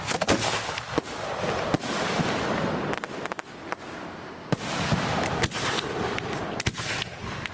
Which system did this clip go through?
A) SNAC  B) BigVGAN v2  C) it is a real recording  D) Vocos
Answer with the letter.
C